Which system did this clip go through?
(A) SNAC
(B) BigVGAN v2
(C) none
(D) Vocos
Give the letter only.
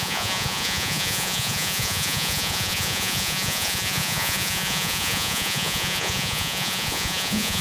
D